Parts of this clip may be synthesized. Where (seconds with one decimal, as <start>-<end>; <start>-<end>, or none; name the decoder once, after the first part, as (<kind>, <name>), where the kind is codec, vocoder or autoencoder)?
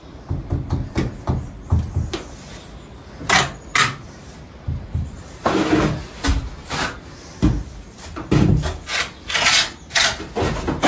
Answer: none